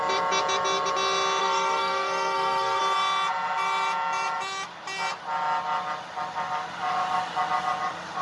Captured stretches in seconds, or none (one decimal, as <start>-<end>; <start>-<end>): 0.0-1.4; 2.8-8.2